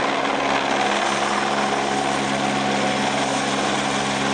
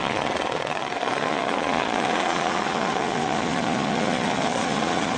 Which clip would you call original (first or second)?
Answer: first